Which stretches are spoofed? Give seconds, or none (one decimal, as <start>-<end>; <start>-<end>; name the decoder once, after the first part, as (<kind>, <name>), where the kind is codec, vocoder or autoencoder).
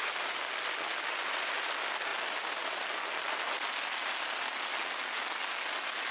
none